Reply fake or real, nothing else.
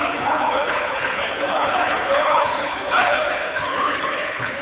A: fake